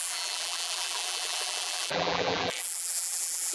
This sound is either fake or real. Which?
fake